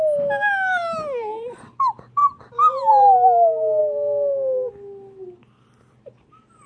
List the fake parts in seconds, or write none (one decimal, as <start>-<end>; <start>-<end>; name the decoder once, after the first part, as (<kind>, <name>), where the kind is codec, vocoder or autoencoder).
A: none